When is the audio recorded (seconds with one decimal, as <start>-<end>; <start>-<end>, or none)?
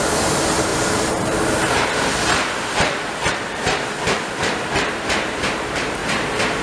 6.0-6.6